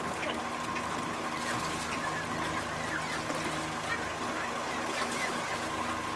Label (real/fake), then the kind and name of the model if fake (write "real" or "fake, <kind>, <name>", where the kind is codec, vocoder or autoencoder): real